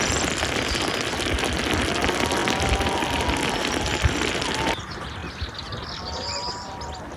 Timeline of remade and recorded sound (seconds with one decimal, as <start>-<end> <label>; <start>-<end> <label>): 0.0-7.2 recorded